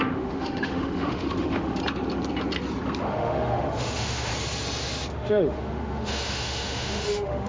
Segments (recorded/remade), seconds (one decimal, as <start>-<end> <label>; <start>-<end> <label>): 0.0-1.8 remade; 1.8-3.0 recorded; 3.0-4.3 remade; 4.3-5.1 recorded; 5.1-7.5 remade